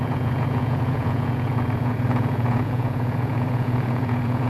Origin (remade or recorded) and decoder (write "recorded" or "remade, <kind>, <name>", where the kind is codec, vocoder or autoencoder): remade, vocoder, Vocos